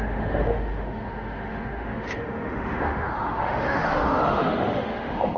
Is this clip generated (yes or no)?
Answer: yes